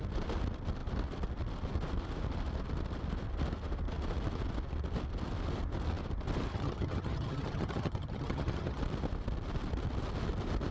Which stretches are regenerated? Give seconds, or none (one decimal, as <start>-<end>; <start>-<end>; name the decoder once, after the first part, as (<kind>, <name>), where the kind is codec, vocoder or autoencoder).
6.5-8.8 (vocoder, HiFi-GAN)